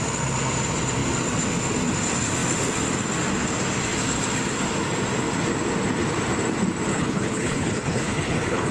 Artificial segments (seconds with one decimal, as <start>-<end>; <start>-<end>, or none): 6.9-8.7